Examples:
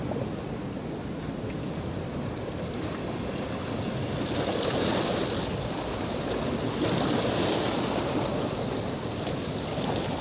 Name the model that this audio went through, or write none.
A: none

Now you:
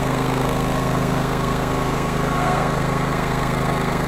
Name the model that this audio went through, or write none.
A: codec, SNAC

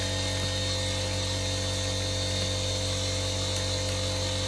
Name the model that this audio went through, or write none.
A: none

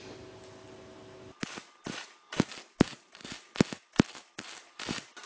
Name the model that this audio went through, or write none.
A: none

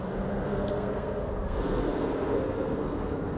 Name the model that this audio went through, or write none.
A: codec, SNAC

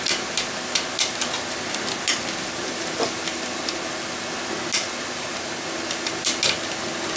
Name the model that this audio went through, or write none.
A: none